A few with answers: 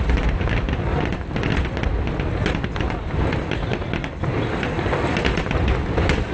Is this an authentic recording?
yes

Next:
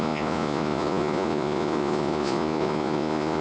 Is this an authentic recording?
no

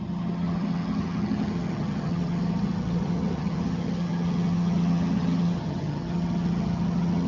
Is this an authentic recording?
no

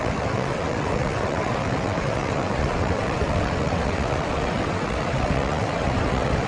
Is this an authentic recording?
no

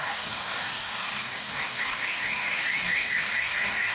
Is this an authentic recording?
no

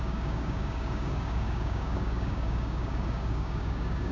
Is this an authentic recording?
no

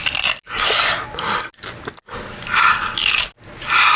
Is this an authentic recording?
yes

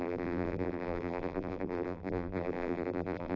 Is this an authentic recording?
no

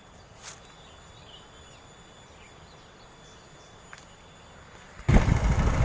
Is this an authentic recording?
yes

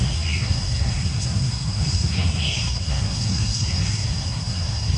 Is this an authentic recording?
no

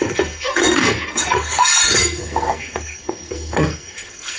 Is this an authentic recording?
no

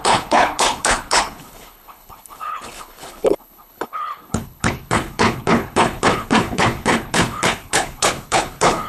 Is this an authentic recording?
no